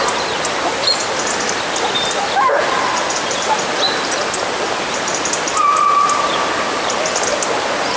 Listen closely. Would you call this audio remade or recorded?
recorded